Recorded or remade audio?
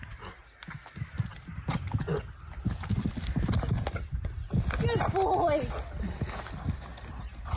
recorded